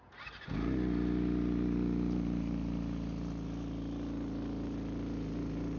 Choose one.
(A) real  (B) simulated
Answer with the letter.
A